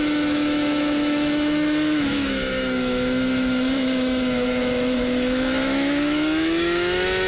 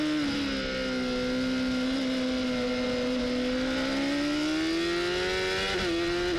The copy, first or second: first